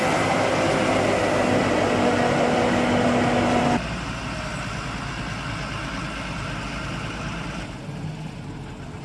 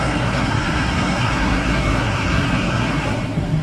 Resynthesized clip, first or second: second